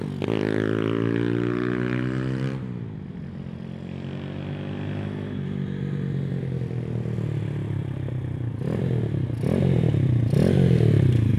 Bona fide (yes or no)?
yes